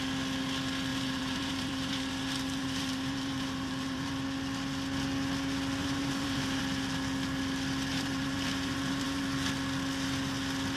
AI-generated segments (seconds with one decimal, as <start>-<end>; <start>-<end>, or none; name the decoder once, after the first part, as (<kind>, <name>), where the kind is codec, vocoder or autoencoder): 0.9-2.1 (vocoder, BigVGAN v2); 2.6-4.1; 5.8-6.6; 7.9-9.2